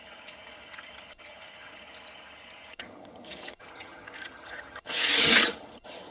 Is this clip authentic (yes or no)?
no